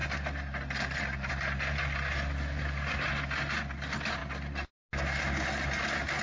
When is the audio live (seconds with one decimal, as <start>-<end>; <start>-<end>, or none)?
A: 0.0-6.2